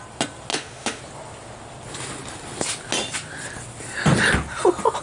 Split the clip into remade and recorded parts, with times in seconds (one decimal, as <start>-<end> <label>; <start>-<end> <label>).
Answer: 0.0-0.5 recorded; 0.5-1.0 remade; 1.0-5.0 recorded